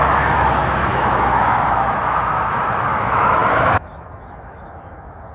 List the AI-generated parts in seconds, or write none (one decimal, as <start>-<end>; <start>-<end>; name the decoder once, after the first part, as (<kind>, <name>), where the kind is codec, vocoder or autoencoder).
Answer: 0.0-5.3 (autoencoder, DAC-VAE)